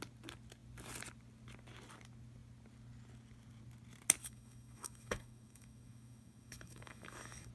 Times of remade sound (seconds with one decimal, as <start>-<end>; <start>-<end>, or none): 4.2-7.5